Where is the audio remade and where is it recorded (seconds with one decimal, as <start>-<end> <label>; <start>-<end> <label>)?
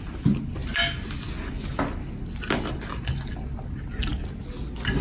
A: 0.0-5.0 recorded